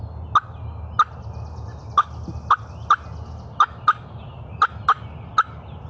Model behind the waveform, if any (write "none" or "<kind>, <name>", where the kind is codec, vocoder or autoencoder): none